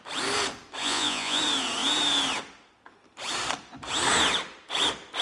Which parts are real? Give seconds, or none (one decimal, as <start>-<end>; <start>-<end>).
0.0-0.8; 1.4-5.2